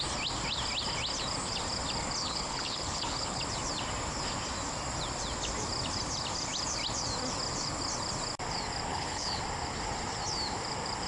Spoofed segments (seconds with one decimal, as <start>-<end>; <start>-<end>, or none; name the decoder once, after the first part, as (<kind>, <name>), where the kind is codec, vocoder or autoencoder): 2.2-3.4 (codec, HILCodec); 8.9-9.4